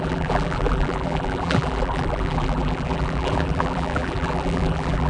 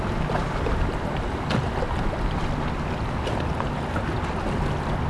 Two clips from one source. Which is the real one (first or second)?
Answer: second